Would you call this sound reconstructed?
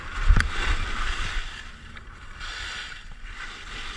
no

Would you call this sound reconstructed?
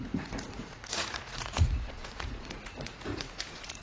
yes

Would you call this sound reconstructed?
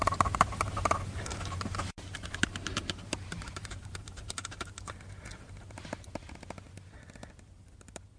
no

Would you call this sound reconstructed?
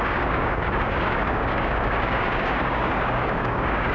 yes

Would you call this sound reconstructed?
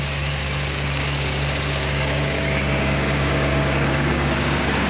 yes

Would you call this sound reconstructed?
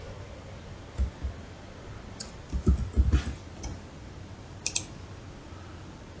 no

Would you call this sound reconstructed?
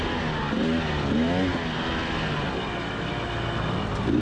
no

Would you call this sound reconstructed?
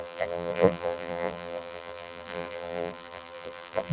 yes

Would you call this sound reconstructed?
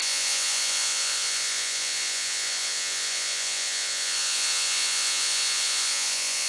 yes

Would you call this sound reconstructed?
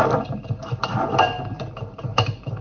no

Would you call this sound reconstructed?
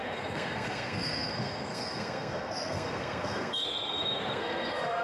yes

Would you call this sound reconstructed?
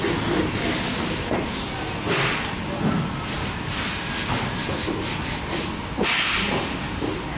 no